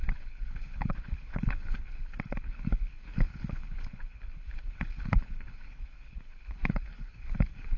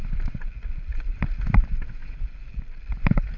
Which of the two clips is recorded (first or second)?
second